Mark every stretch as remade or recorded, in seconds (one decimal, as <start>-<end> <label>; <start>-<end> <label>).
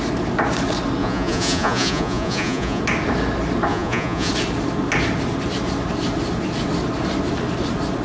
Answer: 0.0-1.0 recorded; 1.0-2.8 remade; 2.8-3.7 recorded; 3.7-4.3 remade; 4.3-8.0 recorded